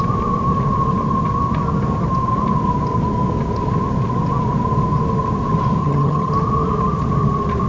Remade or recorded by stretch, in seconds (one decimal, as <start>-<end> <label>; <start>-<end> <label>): 0.0-5.8 recorded; 5.8-6.3 remade; 6.3-7.7 recorded